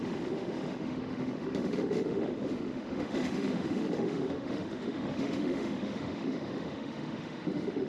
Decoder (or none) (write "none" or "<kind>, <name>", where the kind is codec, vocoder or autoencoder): autoencoder, DAC-VAE